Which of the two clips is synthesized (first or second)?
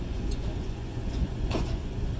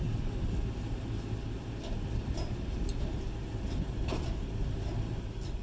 first